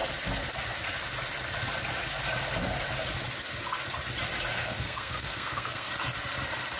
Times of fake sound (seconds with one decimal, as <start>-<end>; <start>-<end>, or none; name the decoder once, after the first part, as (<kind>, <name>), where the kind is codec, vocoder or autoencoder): 4.5-5.9 (codec, SNAC)